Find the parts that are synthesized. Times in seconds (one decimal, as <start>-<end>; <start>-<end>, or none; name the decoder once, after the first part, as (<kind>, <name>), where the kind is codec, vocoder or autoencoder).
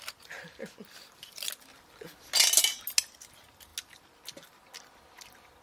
none